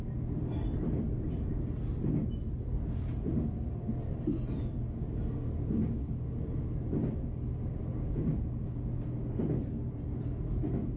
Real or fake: real